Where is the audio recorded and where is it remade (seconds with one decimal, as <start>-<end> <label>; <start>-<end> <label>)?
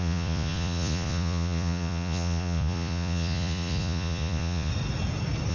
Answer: 0.0-4.7 remade; 4.7-5.5 recorded